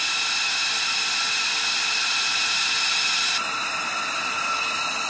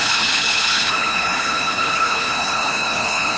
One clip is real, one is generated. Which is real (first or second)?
first